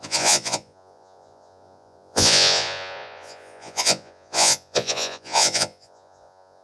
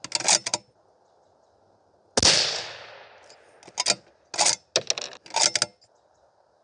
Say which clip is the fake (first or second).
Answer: first